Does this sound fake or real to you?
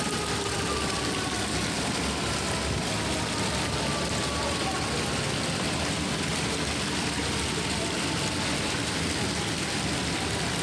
real